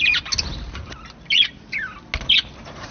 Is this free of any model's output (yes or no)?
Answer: yes